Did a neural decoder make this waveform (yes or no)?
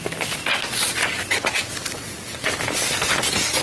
no